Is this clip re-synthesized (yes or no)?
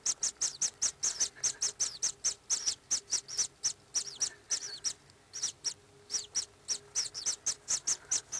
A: no